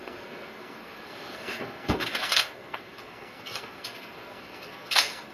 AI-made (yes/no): yes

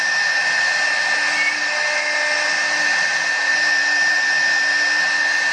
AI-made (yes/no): no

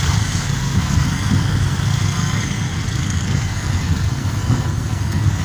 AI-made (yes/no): yes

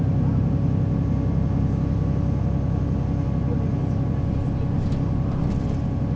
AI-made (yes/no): no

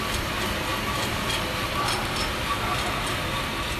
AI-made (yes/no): no